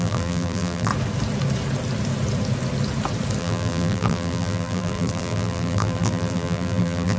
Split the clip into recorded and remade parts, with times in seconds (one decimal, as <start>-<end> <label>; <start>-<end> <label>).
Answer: 0.0-0.9 remade; 0.9-3.4 recorded; 3.4-7.2 remade